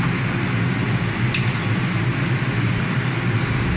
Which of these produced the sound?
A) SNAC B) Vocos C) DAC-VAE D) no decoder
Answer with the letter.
D